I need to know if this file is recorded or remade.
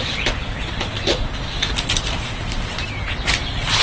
recorded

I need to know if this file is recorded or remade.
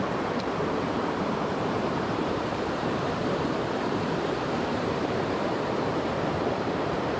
remade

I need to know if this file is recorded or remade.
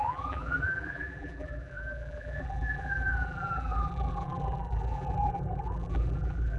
remade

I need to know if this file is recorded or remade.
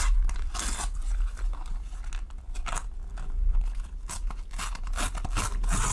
recorded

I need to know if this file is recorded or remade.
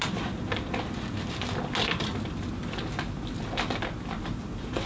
recorded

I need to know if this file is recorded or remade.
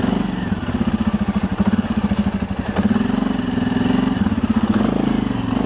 recorded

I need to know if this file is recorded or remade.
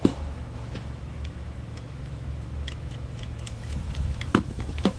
remade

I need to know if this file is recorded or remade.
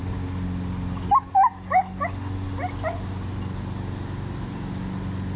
recorded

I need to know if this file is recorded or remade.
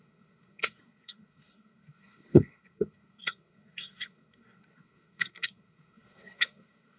remade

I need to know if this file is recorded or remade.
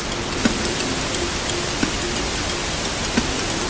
recorded